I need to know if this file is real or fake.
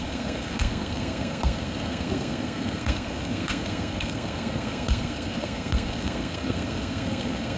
fake